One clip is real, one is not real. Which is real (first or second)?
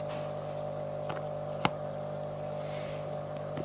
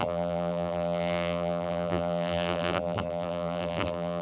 first